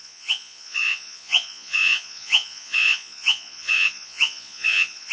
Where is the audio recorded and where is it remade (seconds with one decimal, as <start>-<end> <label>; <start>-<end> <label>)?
0.0-5.1 remade